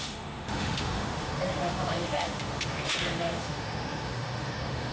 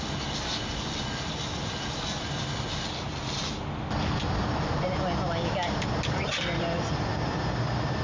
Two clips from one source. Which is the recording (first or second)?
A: second